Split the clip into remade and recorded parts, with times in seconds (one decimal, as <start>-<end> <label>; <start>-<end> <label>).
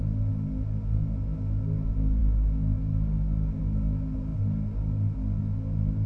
0.0-6.1 recorded